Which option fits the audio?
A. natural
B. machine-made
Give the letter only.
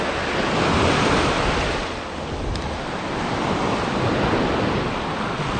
A